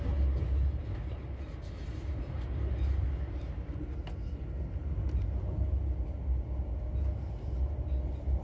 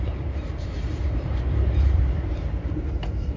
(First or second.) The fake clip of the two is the second